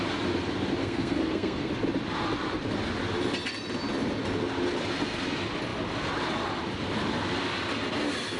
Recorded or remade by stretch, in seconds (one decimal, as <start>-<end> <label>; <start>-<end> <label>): 0.0-0.8 recorded; 0.8-1.7 remade; 1.7-8.4 recorded